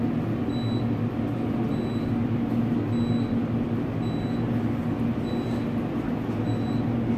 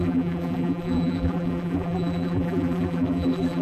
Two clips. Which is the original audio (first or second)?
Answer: first